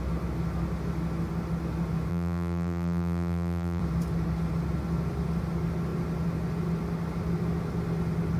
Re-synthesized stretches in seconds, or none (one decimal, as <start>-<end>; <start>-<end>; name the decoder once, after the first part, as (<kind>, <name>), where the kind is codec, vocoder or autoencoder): 2.1-3.8 (vocoder, BigVGAN v2)